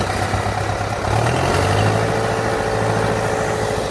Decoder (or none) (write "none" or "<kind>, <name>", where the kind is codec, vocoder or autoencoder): none